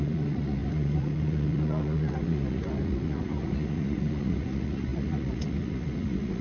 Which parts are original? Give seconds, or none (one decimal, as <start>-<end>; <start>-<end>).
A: none